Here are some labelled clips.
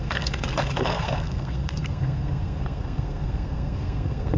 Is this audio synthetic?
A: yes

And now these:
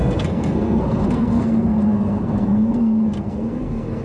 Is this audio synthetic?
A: yes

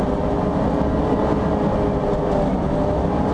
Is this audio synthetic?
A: no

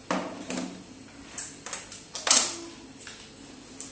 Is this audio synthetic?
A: no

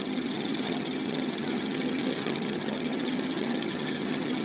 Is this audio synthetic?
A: yes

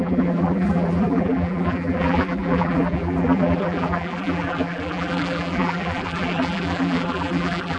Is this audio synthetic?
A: yes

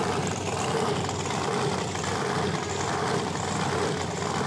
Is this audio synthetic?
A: no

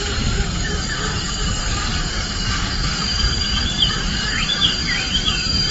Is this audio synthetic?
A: yes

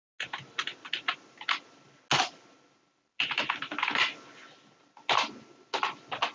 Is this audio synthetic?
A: no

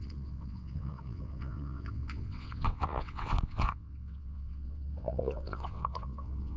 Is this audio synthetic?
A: yes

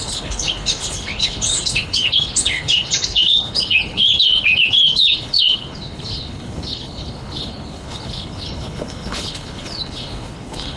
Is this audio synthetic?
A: yes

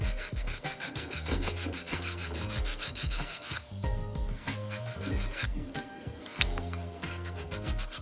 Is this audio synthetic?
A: yes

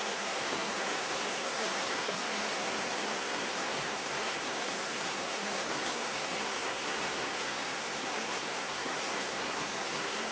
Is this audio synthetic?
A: yes